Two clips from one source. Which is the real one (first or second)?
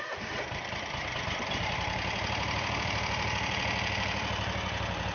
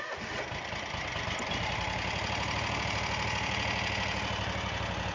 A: second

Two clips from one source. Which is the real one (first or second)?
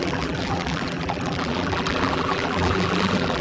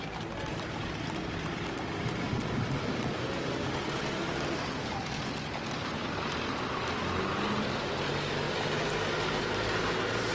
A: second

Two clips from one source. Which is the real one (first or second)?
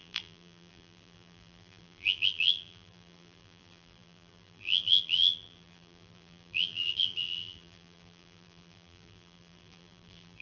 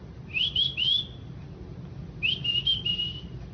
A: second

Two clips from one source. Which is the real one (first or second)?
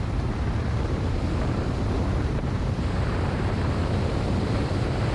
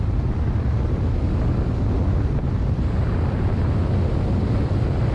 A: second